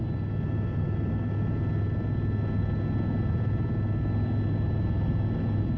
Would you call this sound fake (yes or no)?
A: no